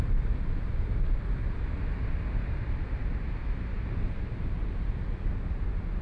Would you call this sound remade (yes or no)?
no